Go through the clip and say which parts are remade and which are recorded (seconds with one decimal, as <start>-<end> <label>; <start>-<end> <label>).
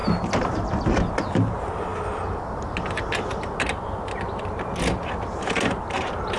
0.0-6.4 recorded